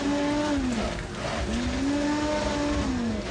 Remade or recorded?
recorded